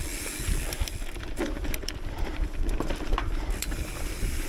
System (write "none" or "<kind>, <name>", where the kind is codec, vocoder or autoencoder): vocoder, BigVGAN v2